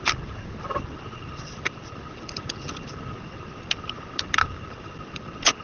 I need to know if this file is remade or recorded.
recorded